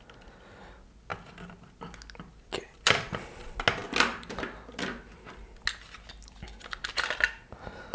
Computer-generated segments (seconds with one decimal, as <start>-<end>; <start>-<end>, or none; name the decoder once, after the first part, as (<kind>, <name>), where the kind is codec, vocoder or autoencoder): none